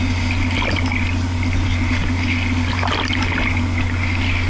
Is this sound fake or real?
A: real